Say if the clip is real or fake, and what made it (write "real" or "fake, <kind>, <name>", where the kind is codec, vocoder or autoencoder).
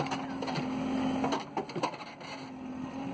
real